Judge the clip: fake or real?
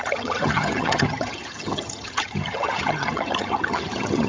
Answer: fake